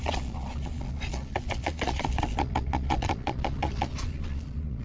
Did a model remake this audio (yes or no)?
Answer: yes